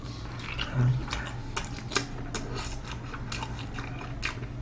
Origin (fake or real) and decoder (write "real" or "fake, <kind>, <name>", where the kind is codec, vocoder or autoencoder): real